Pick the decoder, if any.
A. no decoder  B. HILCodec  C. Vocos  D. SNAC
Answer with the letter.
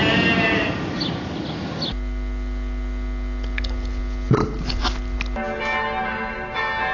A